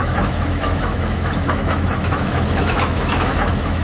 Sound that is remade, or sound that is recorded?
remade